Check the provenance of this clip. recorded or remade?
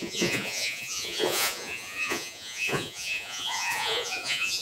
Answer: remade